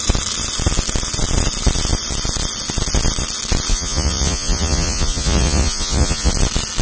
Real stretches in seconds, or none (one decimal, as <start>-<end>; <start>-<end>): 0.0-3.7; 6.3-6.8